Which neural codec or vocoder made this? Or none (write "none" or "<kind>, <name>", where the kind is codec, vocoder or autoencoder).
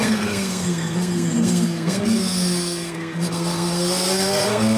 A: codec, SNAC